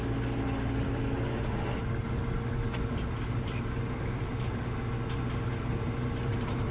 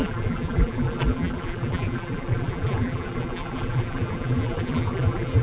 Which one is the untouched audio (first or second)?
first